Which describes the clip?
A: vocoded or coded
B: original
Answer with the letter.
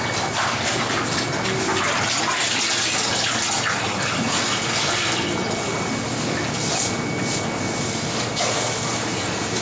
B